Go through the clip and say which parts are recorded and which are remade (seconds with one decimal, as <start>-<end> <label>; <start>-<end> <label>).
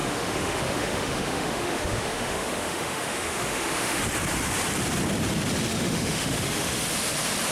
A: 0.0-4.0 remade; 4.0-5.7 recorded; 5.7-6.8 remade; 6.8-7.5 recorded